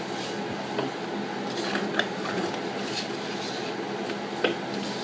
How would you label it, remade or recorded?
recorded